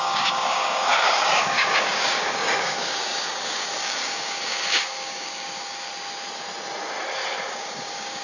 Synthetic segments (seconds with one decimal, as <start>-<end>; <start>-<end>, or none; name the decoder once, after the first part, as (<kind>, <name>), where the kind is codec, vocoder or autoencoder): 0.0-5.9 (codec, DAC); 7.5-8.2